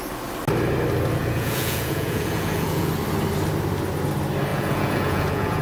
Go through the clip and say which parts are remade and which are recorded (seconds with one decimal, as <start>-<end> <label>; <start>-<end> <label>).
0.0-1.2 recorded; 1.2-2.9 remade; 2.9-4.5 recorded; 4.5-5.6 remade